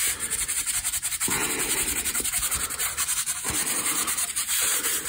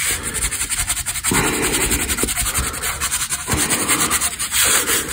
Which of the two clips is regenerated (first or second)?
first